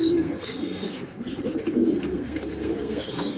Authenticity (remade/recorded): remade